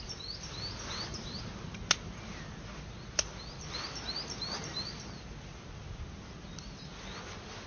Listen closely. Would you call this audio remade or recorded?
recorded